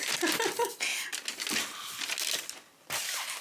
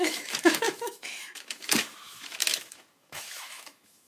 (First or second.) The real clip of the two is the first